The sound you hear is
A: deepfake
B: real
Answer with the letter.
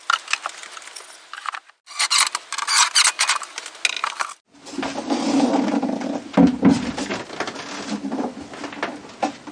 B